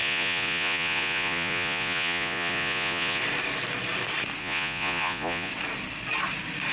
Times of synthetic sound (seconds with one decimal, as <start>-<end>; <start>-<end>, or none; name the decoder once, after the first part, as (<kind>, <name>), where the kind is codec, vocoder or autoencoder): 0.0-3.2 (vocoder, Vocos); 4.4-5.5